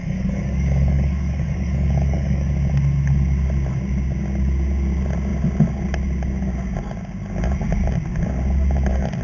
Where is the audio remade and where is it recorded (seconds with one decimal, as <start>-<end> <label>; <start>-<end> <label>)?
0.0-2.5 remade; 2.5-9.2 recorded